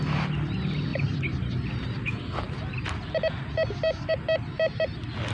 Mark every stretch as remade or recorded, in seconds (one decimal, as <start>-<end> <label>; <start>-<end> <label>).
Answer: 0.0-5.3 recorded